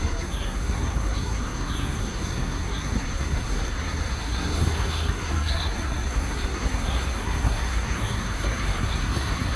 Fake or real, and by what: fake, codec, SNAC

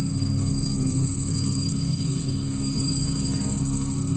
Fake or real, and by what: fake, codec, SNAC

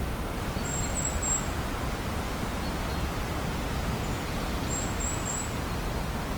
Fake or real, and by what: real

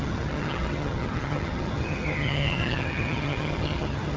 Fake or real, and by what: fake, vocoder, HiFi-GAN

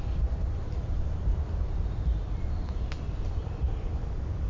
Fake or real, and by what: fake, vocoder, BigVGAN v2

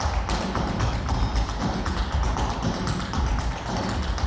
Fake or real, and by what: fake, vocoder, BigVGAN v2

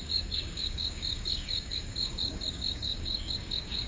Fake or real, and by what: fake, codec, DAC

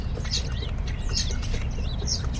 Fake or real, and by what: fake, vocoder, BigVGAN v2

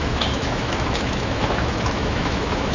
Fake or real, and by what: fake, autoencoder, DAC-VAE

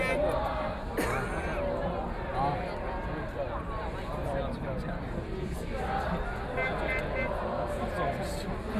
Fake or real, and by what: real